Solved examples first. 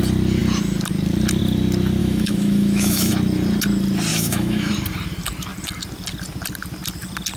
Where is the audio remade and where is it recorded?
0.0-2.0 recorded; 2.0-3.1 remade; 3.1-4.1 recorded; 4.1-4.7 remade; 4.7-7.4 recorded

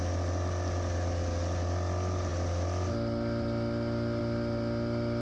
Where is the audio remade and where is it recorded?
0.0-5.2 recorded

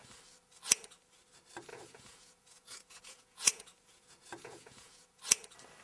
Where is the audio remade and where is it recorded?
0.0-1.7 recorded; 1.7-5.2 remade; 5.2-5.8 recorded

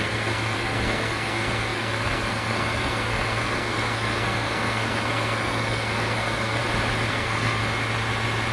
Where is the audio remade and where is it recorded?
0.0-6.6 remade; 6.6-7.1 recorded; 7.1-7.6 remade; 7.6-8.5 recorded

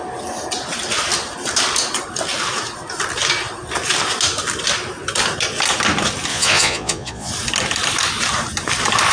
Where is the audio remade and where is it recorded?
0.0-6.3 recorded; 6.3-7.3 remade; 7.3-9.1 recorded

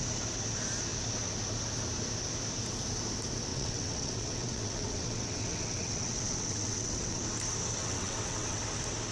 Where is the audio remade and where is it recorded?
0.0-3.5 recorded; 3.5-7.2 remade; 7.2-7.8 recorded; 7.8-8.6 remade; 8.6-9.1 recorded